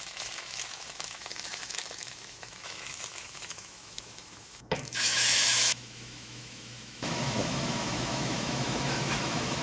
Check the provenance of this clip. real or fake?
fake